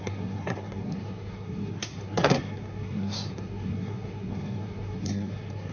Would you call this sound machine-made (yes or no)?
yes